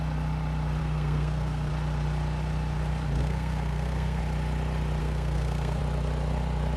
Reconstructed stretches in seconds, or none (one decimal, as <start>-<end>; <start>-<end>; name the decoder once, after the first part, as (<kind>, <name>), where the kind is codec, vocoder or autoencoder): 0.8-1.7 (codec, SNAC); 3.2-4.2; 5.0-5.8